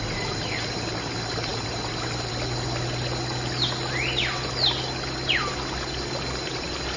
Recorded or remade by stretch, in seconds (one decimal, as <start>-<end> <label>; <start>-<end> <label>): 0.0-7.0 recorded